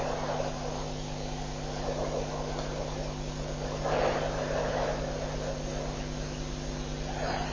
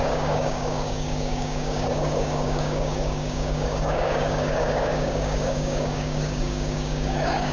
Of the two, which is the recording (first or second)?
first